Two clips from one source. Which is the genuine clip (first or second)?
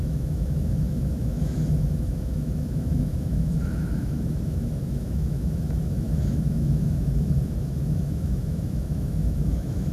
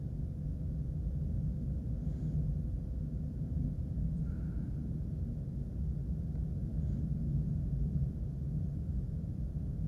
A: second